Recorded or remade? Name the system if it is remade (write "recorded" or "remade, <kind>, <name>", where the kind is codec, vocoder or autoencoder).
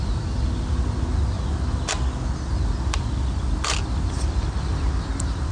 recorded